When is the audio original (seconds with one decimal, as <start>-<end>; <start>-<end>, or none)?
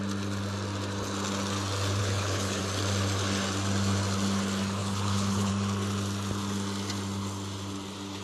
0.0-2.0; 2.6-4.8; 5.5-8.2